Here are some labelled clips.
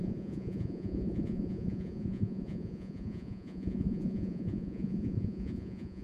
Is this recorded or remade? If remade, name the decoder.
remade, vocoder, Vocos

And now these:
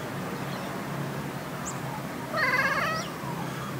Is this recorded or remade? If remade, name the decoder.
recorded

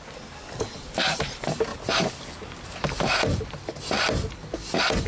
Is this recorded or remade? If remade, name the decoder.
recorded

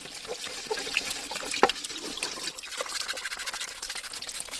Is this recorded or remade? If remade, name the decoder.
recorded